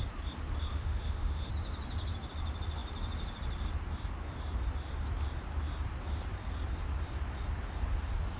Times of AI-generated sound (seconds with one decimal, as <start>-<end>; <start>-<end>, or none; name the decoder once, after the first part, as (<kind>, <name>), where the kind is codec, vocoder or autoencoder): 0.7-1.5 (autoencoder, DAC-VAE)